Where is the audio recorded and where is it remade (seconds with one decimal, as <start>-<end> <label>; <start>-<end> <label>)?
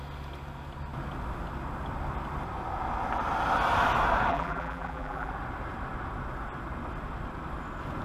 0.0-4.3 recorded; 4.3-5.3 remade; 5.3-8.0 recorded